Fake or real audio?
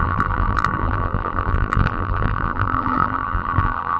fake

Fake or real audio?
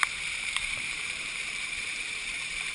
fake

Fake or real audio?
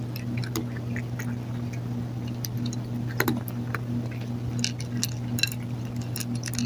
real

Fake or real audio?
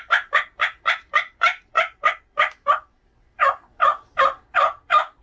fake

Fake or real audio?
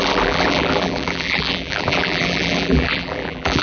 fake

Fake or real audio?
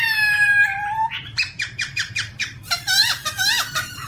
fake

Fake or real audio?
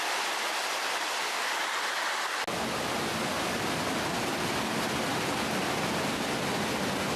real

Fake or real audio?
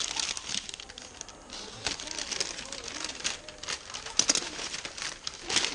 real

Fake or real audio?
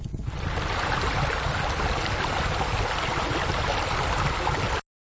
real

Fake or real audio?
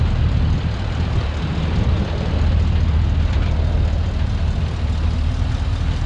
real